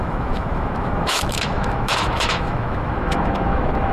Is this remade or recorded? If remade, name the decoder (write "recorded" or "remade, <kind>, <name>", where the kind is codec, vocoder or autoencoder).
remade, autoencoder, DAC-VAE